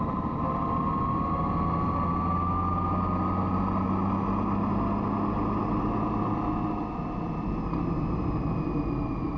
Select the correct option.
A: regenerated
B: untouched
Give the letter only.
B